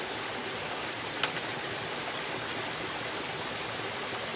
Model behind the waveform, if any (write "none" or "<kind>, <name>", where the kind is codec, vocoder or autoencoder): none